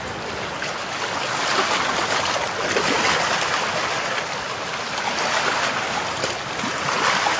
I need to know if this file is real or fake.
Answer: real